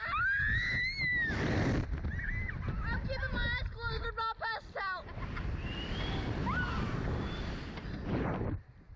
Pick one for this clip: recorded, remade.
recorded